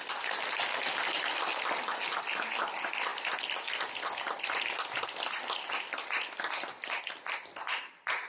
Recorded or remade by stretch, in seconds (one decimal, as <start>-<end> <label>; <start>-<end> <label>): 0.0-8.3 recorded